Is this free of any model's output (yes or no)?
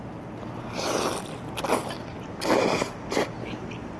yes